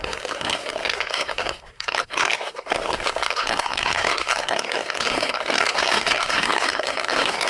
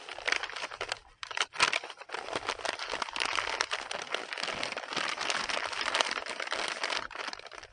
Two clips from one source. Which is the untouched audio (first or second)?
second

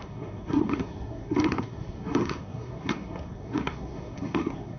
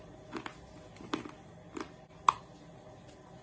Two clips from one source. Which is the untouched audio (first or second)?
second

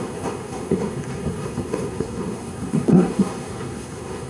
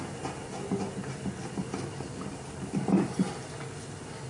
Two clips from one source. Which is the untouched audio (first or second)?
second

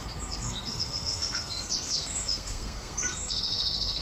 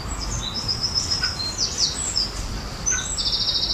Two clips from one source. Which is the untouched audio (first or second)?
second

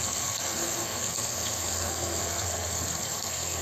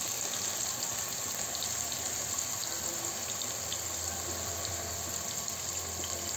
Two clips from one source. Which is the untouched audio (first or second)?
second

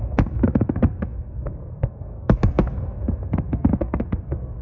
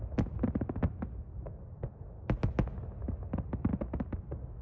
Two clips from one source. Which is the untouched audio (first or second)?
second